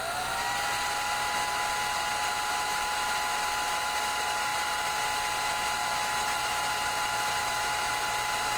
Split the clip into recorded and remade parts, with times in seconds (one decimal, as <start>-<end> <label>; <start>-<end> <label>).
0.0-5.8 recorded; 5.8-6.7 remade; 6.7-7.4 recorded; 7.4-7.9 remade; 7.9-8.6 recorded